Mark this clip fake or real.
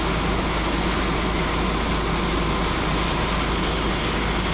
real